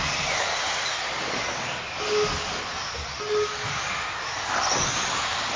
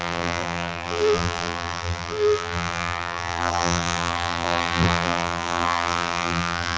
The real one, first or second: first